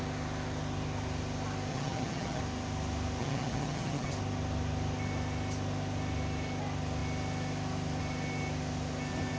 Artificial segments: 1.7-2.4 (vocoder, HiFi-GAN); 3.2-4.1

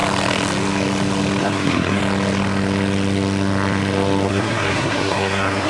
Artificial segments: 1.4-2.0 (codec, SNAC); 4.3-5.7

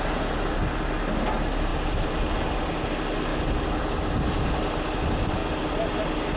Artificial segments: none

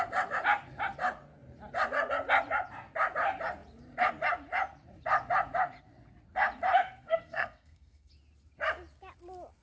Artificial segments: 7.0-8.1 (codec, SNAC)

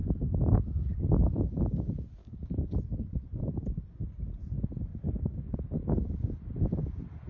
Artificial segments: 2.2-2.7 (codec, DAC); 4.9-5.5

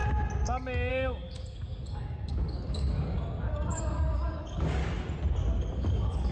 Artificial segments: 0.9-4.8 (codec, DAC); 5.7-6.3

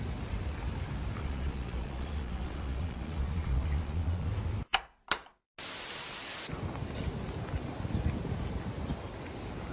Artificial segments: 1.2-4.3 (vocoder, Vocos)